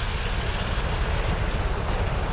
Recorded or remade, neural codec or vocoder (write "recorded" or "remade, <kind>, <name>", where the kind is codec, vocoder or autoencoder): recorded